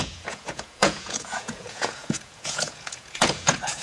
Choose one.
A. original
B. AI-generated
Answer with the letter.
B